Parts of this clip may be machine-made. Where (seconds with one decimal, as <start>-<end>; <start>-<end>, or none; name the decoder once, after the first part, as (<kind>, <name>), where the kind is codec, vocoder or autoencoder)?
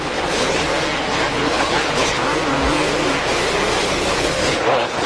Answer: 0.0-0.7 (codec, HILCodec); 1.3-2.2; 3.8-5.1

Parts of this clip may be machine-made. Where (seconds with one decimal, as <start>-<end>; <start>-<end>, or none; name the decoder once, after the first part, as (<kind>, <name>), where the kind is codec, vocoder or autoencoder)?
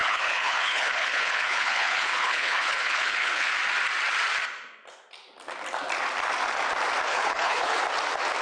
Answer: 0.0-3.5 (codec, HILCodec); 7.1-7.8